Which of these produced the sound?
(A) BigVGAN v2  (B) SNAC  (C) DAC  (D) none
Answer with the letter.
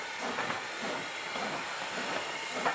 D